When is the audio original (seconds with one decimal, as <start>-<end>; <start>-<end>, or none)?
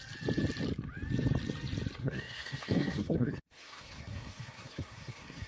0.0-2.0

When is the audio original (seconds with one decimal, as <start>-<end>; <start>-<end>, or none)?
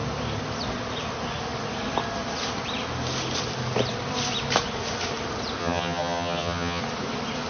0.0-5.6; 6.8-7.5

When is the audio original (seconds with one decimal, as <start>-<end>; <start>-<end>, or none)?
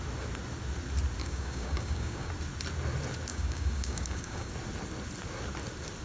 0.0-1.2; 2.3-3.3; 4.5-6.0